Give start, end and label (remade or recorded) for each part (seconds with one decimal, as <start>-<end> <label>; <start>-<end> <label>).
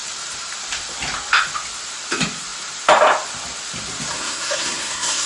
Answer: 0.0-4.1 recorded; 4.1-5.3 remade